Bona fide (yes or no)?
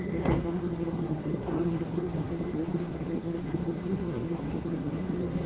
no